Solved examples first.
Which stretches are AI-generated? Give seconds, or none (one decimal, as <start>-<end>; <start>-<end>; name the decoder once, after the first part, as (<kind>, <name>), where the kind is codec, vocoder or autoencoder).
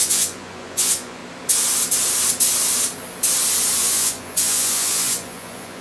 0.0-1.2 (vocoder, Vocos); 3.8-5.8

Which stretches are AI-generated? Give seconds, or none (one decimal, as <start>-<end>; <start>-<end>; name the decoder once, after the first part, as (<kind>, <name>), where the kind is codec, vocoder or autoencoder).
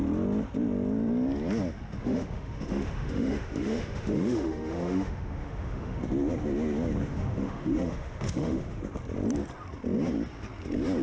2.0-6.0 (autoencoder, DAC-VAE); 7.1-8.8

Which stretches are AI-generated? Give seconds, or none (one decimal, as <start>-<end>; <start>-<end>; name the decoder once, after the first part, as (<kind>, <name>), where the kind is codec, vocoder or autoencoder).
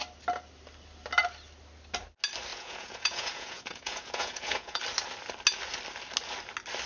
2.5-4.8 (vocoder, Vocos)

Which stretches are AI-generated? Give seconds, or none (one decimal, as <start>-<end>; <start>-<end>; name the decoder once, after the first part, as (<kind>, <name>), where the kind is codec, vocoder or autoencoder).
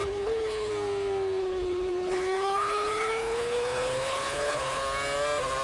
0.0-0.7 (codec, HILCodec); 1.4-4.8